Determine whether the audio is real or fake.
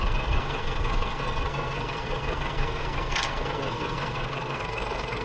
fake